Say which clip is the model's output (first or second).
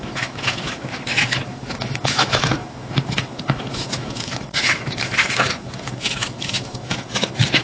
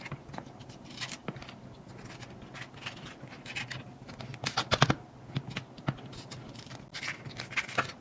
first